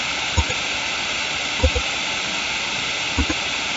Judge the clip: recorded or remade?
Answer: recorded